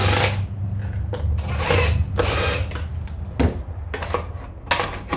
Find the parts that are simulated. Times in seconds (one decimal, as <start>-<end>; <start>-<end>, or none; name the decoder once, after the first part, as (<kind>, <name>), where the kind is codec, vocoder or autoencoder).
none